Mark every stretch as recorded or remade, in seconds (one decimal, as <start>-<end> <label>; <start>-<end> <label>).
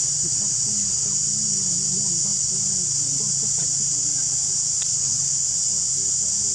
0.0-0.5 remade; 0.5-6.5 recorded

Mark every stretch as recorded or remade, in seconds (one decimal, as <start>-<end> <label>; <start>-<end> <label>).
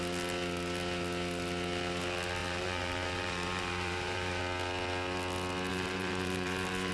0.0-2.4 recorded; 2.4-4.4 remade; 4.4-5.7 recorded; 5.7-6.9 remade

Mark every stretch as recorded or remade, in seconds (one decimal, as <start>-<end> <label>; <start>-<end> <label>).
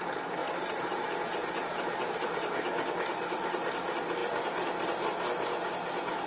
0.0-6.3 recorded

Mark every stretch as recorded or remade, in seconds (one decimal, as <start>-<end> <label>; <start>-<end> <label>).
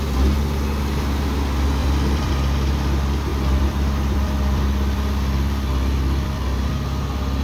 0.0-1.8 recorded; 1.8-2.3 remade; 2.3-3.3 recorded; 3.3-6.7 remade; 6.7-7.4 recorded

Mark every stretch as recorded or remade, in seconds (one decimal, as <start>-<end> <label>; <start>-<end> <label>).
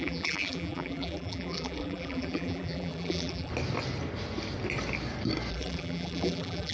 0.0-3.5 remade; 3.5-5.5 recorded; 5.5-6.7 remade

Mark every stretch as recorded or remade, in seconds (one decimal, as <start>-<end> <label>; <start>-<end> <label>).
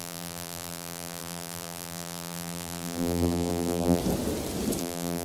0.0-4.0 remade; 4.0-4.8 recorded; 4.8-5.2 remade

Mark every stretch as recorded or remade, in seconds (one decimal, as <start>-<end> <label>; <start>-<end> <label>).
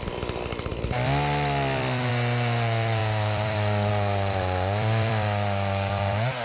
0.0-6.4 remade